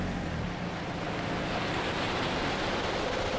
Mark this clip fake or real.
real